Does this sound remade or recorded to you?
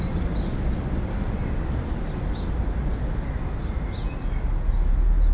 recorded